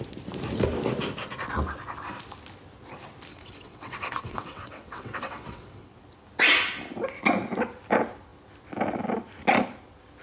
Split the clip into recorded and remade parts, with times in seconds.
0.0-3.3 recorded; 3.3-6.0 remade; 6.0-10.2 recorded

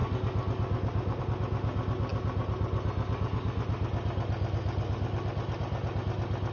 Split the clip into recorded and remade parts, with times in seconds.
0.0-6.5 recorded

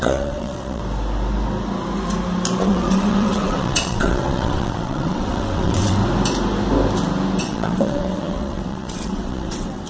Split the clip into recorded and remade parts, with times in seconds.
0.0-0.8 remade; 0.8-2.6 recorded; 2.6-6.0 remade; 6.0-7.4 recorded; 7.4-9.9 remade